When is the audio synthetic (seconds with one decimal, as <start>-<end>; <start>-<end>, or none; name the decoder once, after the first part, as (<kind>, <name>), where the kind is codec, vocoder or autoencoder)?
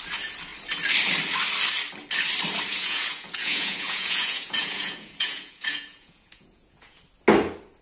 2.7-7.0 (vocoder, Vocos)